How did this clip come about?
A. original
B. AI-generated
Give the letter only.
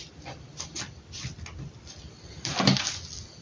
A